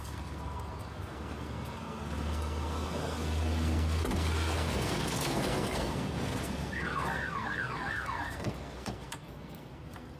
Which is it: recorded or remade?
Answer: remade